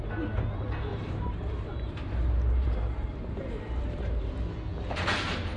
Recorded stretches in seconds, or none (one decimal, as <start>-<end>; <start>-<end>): 0.0-0.9; 4.3-5.6